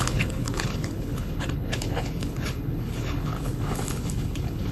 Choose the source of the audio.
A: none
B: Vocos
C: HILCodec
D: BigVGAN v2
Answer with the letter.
C